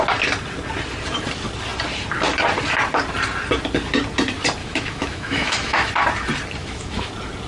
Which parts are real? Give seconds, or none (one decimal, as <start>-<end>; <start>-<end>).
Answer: 0.0-4.6; 5.9-6.6; 7.1-7.5